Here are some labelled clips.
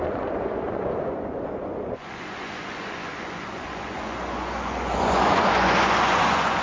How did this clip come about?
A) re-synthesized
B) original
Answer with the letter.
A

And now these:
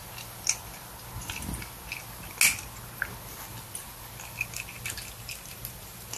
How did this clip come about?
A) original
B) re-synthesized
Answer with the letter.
A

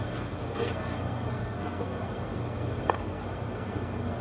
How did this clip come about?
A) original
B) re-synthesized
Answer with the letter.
B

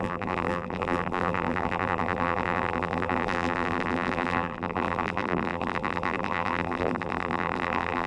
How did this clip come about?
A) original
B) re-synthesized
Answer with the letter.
B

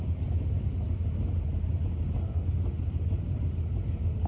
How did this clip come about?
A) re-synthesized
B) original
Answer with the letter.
B